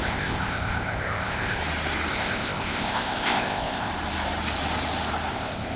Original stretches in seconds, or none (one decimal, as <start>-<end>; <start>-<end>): 1.6-2.1; 3.9-5.3